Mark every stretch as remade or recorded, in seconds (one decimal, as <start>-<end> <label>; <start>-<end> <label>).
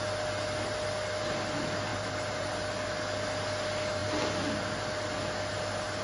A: 0.0-1.9 recorded; 1.9-2.5 remade; 2.5-6.0 recorded